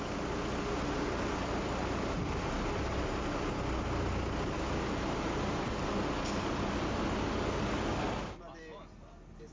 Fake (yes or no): no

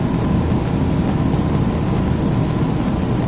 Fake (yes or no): no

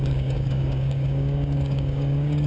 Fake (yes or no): yes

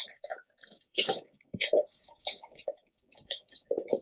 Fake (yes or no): yes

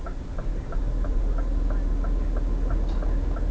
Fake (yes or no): no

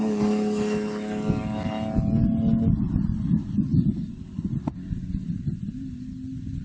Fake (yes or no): no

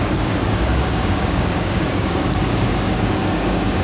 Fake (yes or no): yes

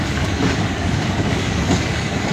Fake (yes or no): yes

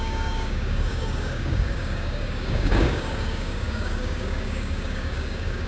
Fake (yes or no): yes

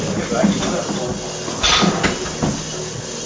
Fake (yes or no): no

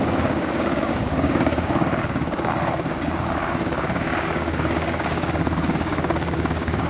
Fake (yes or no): yes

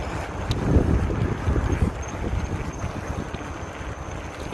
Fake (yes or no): no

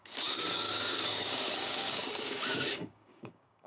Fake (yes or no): yes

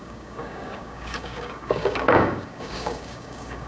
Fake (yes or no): yes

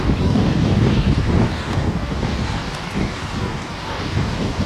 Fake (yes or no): yes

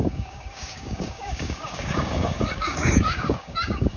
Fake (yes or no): yes